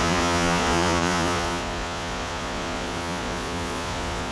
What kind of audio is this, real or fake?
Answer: fake